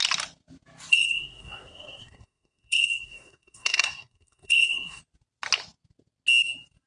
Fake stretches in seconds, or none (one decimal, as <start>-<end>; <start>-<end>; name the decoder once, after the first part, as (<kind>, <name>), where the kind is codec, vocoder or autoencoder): 0.9-5.0 (codec, SNAC)